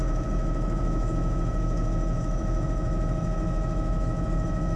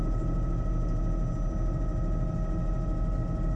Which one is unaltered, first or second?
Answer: second